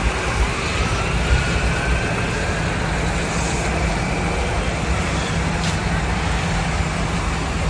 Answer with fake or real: real